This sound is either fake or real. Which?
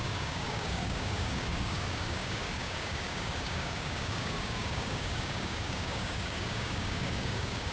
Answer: fake